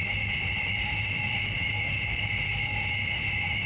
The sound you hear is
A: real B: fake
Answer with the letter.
B